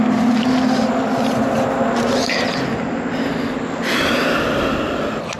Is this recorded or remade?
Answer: recorded